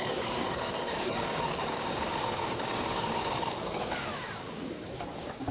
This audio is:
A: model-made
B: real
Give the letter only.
A